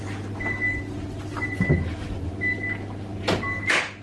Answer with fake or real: real